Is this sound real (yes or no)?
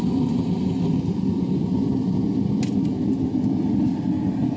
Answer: yes